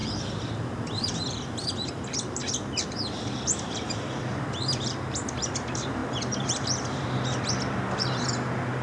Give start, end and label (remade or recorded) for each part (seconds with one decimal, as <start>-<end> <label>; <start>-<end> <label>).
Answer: 0.0-2.4 remade; 2.4-4.2 recorded; 4.2-8.8 remade